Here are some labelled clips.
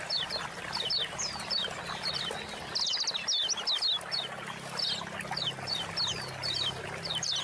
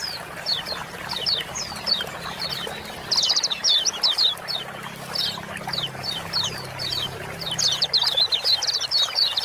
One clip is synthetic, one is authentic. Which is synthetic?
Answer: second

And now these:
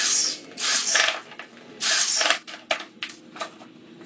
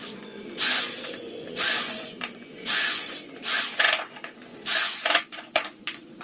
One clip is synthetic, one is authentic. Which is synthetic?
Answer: second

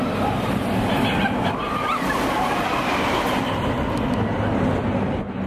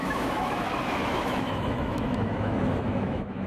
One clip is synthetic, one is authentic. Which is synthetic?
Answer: second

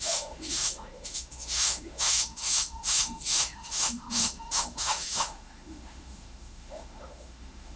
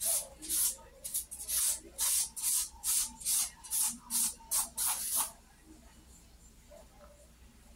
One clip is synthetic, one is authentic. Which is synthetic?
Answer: first